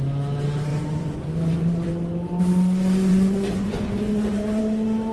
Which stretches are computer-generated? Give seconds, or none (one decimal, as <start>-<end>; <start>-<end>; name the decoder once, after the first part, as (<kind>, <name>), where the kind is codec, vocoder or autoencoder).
0.7-1.9 (vocoder, Vocos); 3.1-4.6

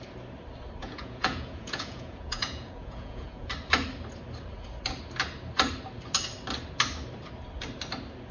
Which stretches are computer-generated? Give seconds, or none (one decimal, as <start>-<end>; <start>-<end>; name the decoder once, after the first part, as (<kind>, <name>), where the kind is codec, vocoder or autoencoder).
0.8-3.5 (vocoder, Vocos)

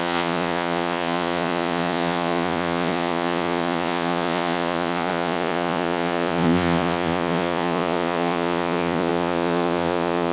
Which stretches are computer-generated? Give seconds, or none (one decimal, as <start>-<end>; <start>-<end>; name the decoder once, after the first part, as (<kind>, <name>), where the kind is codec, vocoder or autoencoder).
0.0-10.3 (vocoder, Vocos)

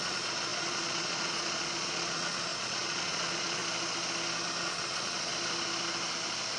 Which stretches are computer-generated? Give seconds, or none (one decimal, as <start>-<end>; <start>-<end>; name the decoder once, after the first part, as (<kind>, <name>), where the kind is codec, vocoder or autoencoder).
0.0-3.6 (vocoder, Vocos); 4.6-5.3

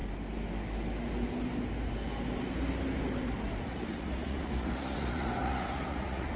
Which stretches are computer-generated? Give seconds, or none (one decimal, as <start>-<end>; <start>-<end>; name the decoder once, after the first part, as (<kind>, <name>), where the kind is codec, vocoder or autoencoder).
3.6-6.4 (vocoder, Vocos)

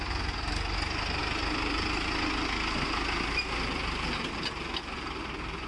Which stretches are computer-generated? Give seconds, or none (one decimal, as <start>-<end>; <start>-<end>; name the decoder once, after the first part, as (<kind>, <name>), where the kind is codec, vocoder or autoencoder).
none

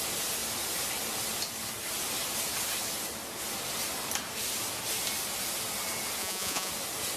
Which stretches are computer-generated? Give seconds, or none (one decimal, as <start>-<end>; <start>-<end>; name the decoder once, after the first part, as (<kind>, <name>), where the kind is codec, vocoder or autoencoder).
6.2-6.7 (vocoder, Vocos)

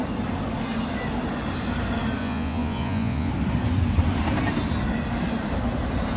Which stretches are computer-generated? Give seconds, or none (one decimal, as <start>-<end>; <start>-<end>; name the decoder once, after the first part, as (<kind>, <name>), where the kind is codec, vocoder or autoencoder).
2.2-3.3 (vocoder, Vocos)